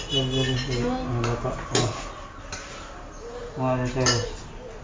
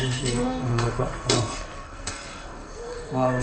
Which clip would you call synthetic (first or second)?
second